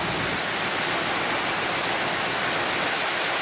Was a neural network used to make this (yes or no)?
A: no